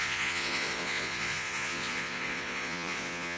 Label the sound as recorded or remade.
remade